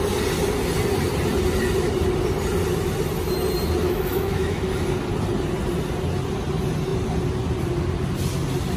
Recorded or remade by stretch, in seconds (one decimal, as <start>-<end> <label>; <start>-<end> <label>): 0.0-3.8 recorded; 3.8-4.6 remade; 4.6-8.8 recorded